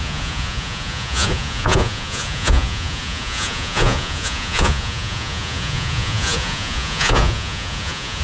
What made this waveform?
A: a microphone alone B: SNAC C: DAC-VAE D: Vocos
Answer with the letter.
D